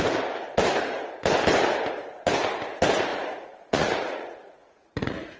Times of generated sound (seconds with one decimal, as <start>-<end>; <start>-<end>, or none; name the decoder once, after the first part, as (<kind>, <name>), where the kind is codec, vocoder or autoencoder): 3.1-5.4 (vocoder, Vocos)